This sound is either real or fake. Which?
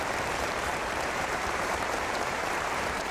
fake